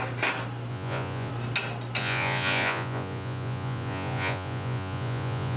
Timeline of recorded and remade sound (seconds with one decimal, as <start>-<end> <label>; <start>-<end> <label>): 0.0-0.7 recorded; 0.7-1.3 remade; 1.3-2.0 recorded; 2.0-5.6 remade